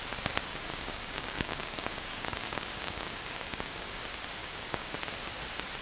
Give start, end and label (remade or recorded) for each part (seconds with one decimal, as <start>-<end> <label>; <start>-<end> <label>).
0.0-0.5 recorded; 0.5-4.0 remade; 4.0-4.4 recorded; 4.4-4.9 remade; 4.9-5.8 recorded